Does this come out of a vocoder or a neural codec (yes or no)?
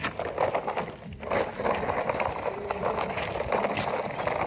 no